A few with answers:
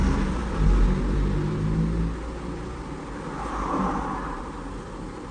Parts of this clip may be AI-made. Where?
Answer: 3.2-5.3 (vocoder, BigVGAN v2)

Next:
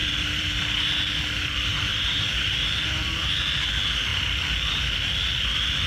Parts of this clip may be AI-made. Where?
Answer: 0.0-0.9 (vocoder, BigVGAN v2); 1.9-3.3

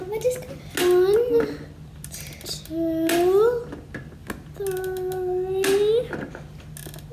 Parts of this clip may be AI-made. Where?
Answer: none

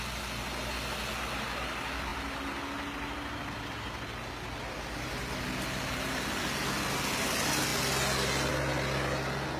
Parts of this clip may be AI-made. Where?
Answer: none

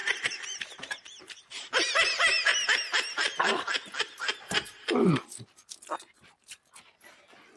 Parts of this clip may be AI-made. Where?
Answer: 0.0-2.5 (vocoder, BigVGAN v2); 4.4-7.6

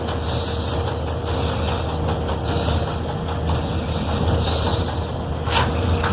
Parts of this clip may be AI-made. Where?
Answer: 4.7-5.3 (vocoder, BigVGAN v2)